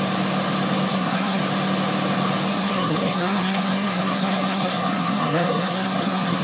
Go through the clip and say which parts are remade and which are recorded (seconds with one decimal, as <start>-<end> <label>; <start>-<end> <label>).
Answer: 0.0-0.9 recorded; 0.9-1.4 remade; 1.4-2.5 recorded; 2.5-6.4 remade